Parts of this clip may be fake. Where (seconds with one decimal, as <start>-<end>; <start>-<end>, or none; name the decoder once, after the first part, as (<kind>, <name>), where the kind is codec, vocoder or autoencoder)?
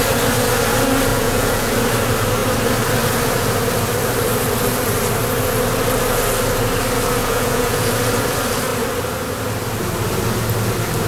1.1-1.7 (vocoder, Vocos); 7.2-8.0